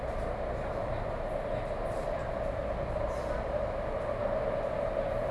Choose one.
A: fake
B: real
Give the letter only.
B